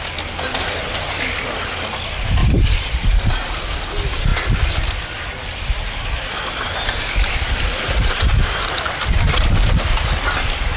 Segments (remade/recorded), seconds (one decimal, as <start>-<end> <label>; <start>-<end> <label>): 0.0-2.4 recorded; 2.4-2.9 remade; 2.9-8.4 recorded; 8.4-9.3 remade; 9.3-10.8 recorded